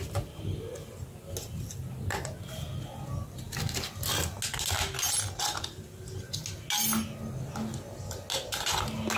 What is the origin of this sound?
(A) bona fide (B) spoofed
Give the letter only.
A